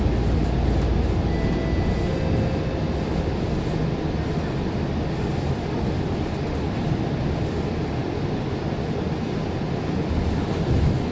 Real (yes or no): yes